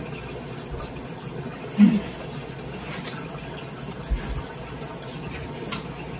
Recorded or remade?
recorded